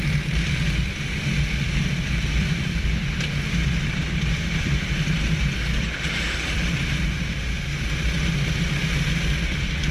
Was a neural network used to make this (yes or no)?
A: yes